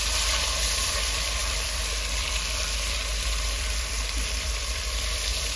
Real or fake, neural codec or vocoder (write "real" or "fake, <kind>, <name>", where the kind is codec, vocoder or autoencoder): fake, vocoder, BigVGAN v2